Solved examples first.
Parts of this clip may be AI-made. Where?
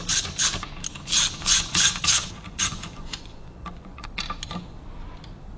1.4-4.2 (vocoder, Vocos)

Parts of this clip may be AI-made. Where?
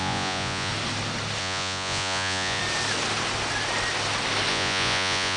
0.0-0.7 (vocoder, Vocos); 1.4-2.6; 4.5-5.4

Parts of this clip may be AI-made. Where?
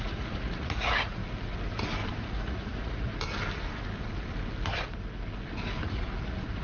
0.0-1.2 (vocoder, Vocos); 2.2-3.1; 5.8-6.6